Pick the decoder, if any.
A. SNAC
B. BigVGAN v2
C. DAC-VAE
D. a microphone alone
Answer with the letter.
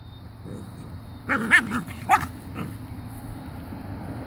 D